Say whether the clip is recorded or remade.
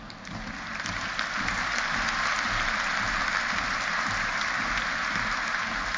recorded